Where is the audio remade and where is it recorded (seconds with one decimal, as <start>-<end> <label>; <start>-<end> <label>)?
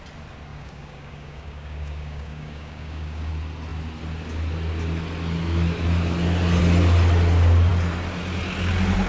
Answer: 0.0-0.5 recorded; 0.5-3.3 remade; 3.3-9.1 recorded